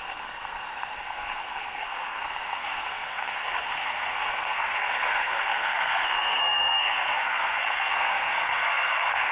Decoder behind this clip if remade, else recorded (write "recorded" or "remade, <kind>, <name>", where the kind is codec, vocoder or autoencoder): remade, codec, SNAC